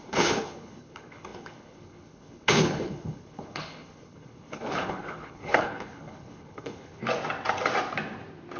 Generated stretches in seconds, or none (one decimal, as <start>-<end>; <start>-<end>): 0.0-7.0